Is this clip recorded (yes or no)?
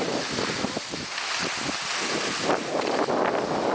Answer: yes